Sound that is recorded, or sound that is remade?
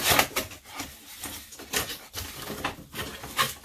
recorded